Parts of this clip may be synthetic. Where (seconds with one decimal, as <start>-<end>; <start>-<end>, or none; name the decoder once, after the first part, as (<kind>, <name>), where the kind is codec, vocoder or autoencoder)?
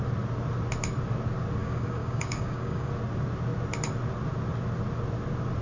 1.6-2.9 (codec, DAC)